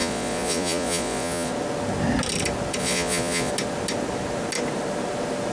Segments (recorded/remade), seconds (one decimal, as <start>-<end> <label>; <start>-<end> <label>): 0.0-1.5 remade; 1.5-2.8 recorded; 2.8-3.5 remade; 3.5-5.5 recorded